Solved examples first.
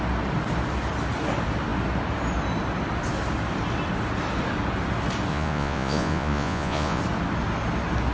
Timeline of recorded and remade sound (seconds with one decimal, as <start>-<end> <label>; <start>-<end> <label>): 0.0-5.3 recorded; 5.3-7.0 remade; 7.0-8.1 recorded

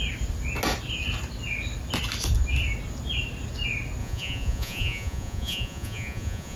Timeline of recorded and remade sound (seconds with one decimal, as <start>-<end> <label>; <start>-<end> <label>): 0.0-4.0 recorded; 4.0-6.6 remade

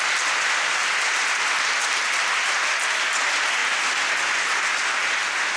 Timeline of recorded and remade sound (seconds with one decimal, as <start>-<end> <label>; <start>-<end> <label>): 0.0-5.6 recorded